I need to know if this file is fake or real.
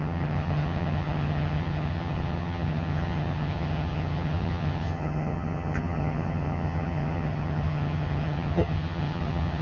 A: fake